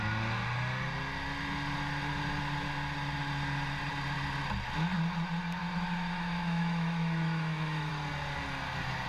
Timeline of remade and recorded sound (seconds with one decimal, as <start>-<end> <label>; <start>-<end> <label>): 0.0-5.6 recorded; 5.6-7.9 remade; 7.9-9.1 recorded